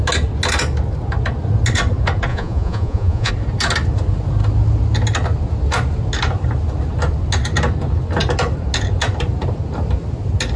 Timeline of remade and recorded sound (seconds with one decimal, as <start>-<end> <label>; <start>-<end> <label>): 0.0-2.3 recorded; 2.3-3.3 remade; 3.3-10.6 recorded